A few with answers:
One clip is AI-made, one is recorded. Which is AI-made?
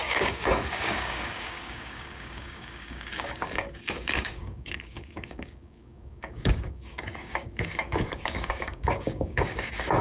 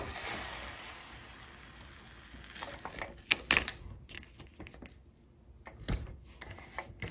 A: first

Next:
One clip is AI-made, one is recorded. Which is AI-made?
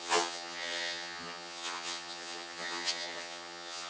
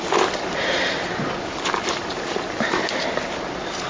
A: first